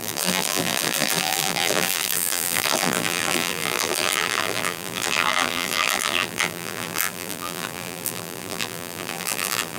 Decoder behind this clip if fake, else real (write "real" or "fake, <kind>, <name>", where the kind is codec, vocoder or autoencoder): fake, vocoder, BigVGAN v2